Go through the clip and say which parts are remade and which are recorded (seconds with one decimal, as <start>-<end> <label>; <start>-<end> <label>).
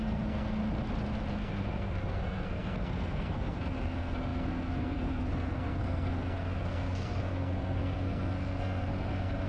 0.0-0.6 remade; 0.6-1.3 recorded; 1.3-9.5 remade